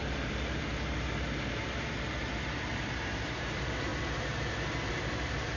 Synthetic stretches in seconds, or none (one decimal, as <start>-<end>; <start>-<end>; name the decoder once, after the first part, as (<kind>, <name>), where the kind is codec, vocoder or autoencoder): 0.0-3.9 (vocoder, BigVGAN v2); 4.9-5.6